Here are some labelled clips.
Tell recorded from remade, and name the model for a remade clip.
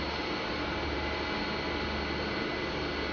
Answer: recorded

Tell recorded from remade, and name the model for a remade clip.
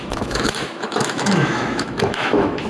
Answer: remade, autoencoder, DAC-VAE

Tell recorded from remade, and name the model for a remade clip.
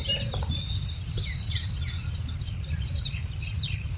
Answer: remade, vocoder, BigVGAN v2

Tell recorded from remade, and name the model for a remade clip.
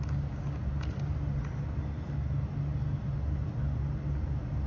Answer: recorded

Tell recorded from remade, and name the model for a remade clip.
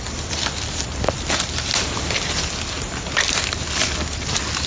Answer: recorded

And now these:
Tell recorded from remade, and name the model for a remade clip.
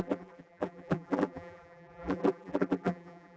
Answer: remade, vocoder, BigVGAN v2